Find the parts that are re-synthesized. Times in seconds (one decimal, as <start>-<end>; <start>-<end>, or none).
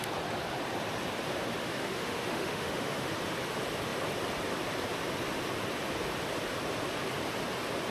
1.6-3.1